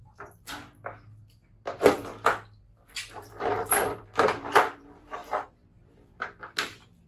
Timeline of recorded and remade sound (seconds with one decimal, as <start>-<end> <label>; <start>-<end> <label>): 0.0-2.6 recorded; 2.6-7.1 remade